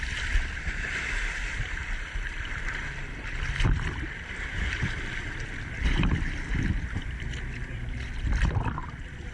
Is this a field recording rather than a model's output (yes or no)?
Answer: no